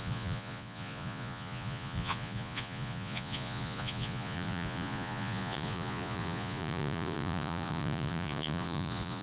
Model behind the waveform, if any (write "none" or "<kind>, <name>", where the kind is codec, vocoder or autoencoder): vocoder, Vocos